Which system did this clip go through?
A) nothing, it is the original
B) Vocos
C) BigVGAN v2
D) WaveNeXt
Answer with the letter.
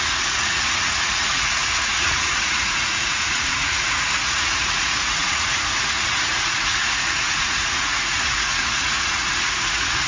B